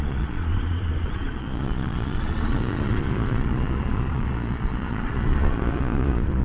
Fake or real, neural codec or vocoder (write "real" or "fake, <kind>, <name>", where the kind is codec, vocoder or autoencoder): fake, vocoder, Vocos